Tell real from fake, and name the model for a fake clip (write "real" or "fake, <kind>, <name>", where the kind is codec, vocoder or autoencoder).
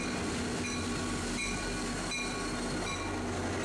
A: real